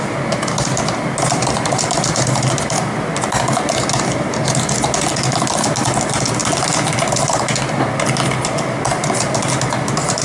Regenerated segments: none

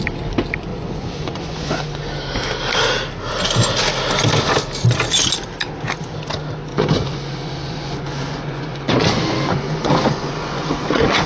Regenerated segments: 0.7-1.8 (vocoder, Vocos); 6.7-11.3

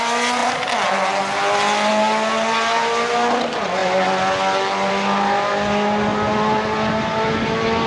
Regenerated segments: none